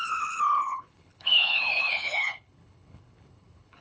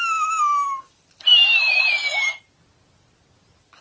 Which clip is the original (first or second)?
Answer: second